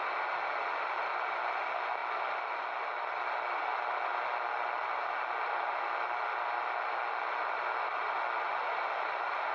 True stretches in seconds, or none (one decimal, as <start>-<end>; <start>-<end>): 0.0-9.5